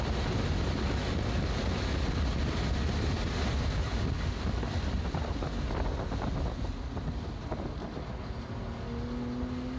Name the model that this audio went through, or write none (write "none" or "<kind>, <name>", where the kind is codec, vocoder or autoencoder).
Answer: none